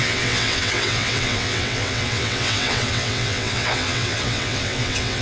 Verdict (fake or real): fake